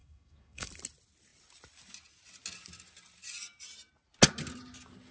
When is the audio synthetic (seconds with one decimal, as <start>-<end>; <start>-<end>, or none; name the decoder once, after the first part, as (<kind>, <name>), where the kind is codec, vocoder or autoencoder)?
0.0-0.7 (autoencoder, DAC-VAE)